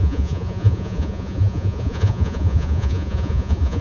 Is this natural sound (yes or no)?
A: no